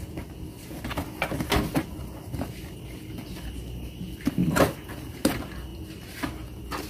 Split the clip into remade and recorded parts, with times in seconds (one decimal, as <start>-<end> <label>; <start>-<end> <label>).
0.0-6.9 recorded